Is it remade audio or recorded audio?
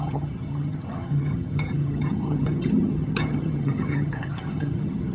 remade